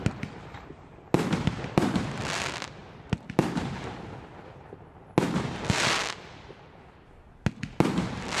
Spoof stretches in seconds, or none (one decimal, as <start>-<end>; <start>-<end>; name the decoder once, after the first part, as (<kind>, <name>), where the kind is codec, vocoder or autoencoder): none